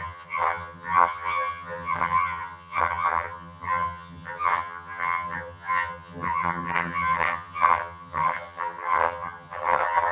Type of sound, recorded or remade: remade